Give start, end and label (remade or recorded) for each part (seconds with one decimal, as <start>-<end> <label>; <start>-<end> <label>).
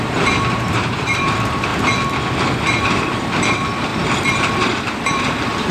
0.0-1.7 remade; 1.7-2.8 recorded; 2.8-5.7 remade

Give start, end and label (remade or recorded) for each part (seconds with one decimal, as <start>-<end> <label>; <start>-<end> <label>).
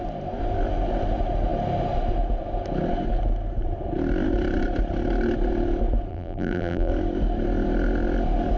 0.0-6.1 recorded; 6.1-6.9 remade; 6.9-8.6 recorded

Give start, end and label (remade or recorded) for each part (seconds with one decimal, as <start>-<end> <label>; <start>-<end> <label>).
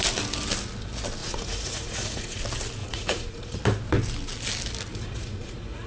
0.0-1.2 recorded; 1.2-2.4 remade; 2.4-2.8 recorded; 2.8-3.6 remade; 3.6-4.9 recorded; 4.9-5.9 remade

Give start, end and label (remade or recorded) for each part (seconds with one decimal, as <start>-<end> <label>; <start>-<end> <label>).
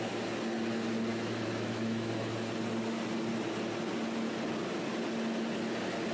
0.0-1.1 recorded; 1.1-2.1 remade; 2.1-6.1 recorded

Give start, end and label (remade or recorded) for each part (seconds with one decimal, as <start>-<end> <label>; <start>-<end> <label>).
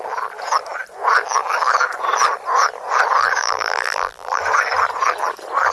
0.0-3.4 recorded; 3.4-4.4 remade; 4.4-5.7 recorded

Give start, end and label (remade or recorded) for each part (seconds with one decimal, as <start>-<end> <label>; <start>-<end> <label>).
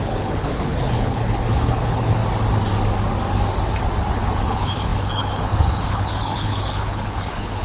0.0-2.2 remade; 2.2-4.1 recorded; 4.1-7.6 remade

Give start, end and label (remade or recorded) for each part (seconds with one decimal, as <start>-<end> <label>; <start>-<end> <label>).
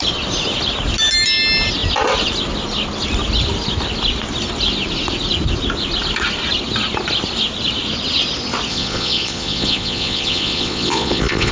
0.0-8.7 recorded; 8.7-11.5 remade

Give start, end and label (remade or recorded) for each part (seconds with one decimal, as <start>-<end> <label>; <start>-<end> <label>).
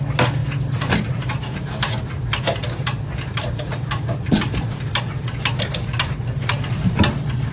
0.0-7.5 recorded